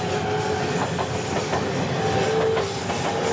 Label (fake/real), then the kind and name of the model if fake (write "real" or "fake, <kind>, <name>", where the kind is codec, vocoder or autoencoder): real